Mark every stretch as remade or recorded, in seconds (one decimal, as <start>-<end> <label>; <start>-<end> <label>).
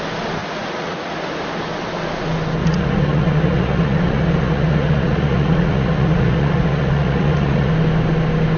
0.0-0.4 recorded; 0.4-1.2 remade; 1.2-2.6 recorded; 2.6-7.7 remade; 7.7-8.6 recorded